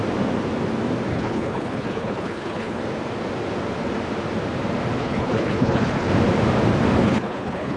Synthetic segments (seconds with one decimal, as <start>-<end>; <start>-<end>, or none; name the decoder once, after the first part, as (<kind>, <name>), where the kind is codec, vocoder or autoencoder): 1.1-2.8 (codec, HILCodec); 5.0-6.1; 7.0-7.8